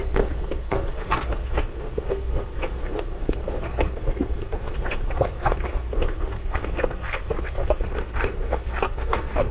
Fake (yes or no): yes